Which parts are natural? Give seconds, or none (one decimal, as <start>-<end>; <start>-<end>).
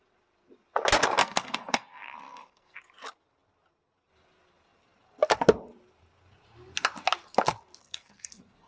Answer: 0.0-1.2; 2.8-7.8